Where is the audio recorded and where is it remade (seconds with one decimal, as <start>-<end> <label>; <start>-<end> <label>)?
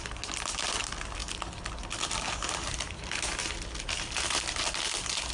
0.0-5.3 recorded